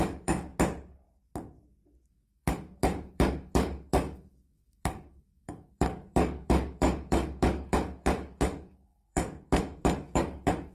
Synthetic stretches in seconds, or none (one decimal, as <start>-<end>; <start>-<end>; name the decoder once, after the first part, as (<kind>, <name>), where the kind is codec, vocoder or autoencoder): 0.0-0.5 (codec, DAC); 2.1-10.7

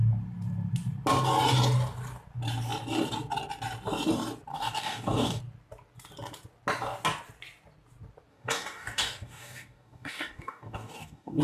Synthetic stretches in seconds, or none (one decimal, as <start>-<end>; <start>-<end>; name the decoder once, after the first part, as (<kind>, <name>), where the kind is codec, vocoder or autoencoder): 4.5-5.4 (codec, DAC); 8.3-11.4

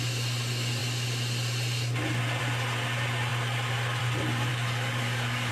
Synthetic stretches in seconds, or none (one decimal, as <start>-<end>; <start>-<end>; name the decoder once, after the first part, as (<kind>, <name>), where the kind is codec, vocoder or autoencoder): 4.5-5.5 (codec, DAC)

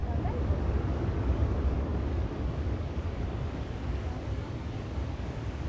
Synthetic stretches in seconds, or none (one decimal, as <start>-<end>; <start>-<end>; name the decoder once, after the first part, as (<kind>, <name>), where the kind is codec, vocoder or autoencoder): 0.8-5.7 (codec, DAC)

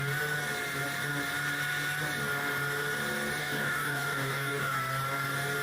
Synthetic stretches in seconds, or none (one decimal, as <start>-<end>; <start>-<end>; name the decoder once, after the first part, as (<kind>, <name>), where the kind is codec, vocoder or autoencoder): 3.4-4.8 (codec, DAC)

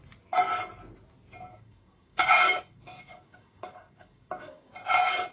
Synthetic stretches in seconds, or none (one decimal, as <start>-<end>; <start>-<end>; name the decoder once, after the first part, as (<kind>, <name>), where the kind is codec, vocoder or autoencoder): 1.5-4.7 (codec, DAC)